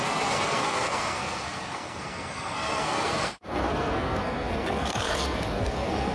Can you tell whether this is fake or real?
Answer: fake